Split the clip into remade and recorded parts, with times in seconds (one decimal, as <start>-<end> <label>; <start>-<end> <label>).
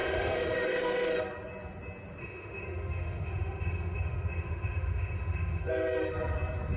0.0-1.2 remade; 1.2-2.2 recorded; 2.2-5.7 remade; 5.7-6.8 recorded